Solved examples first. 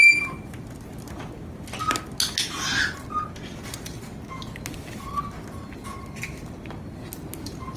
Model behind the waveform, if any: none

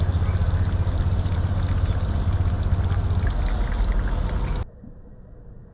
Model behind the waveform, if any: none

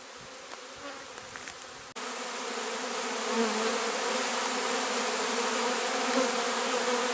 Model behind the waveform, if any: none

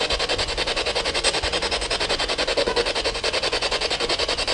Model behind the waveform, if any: vocoder, Vocos